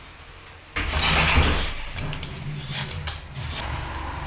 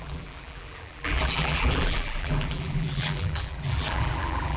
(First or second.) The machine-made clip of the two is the second